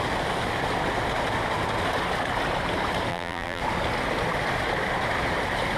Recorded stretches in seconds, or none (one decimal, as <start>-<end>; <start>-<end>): 0.0-3.1; 3.6-5.8